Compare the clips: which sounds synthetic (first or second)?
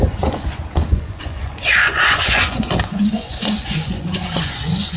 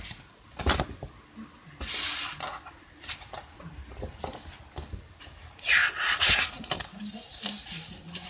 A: first